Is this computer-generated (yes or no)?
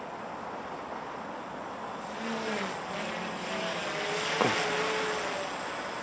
no